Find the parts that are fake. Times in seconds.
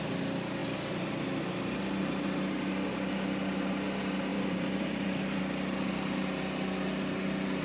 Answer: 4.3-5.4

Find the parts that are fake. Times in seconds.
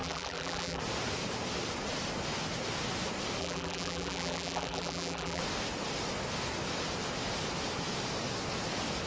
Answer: 0.0-0.8; 3.4-5.4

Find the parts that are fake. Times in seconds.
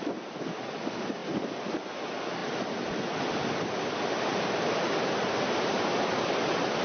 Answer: 1.2-2.0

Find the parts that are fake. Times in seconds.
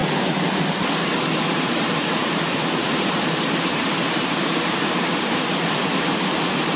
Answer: 1.4-6.8